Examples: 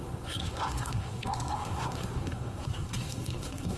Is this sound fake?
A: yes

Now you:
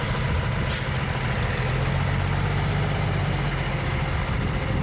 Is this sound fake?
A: no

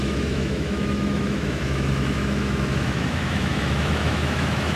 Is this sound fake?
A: yes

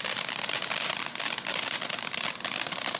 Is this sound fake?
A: no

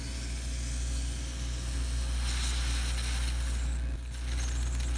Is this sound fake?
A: no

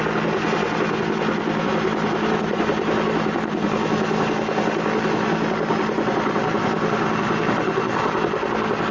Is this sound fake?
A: no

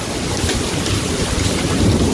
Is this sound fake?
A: no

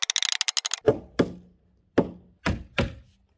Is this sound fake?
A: no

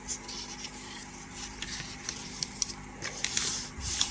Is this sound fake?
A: yes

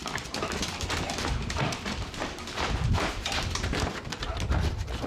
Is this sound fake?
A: yes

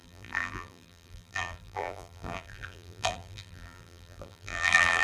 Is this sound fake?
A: yes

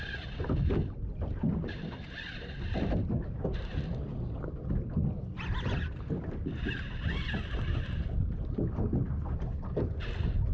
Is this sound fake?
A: no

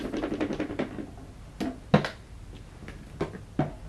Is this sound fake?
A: no